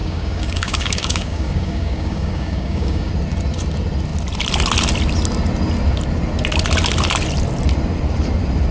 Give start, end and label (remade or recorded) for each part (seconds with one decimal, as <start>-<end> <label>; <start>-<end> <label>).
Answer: 0.0-3.1 remade; 3.1-8.7 recorded